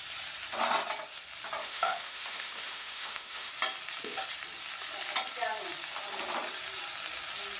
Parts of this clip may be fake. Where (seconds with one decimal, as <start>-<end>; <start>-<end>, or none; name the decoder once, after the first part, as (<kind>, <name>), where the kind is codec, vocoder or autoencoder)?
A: 1.6-3.5 (autoencoder, DAC-VAE)